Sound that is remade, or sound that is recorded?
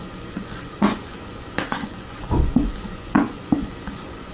remade